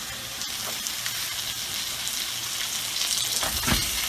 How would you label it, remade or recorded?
recorded